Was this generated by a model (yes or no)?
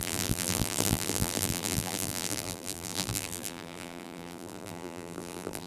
yes